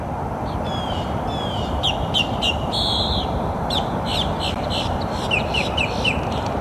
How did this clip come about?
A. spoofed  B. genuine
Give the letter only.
A